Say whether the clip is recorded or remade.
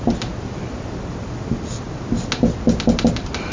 recorded